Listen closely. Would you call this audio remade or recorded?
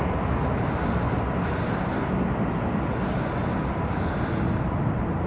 recorded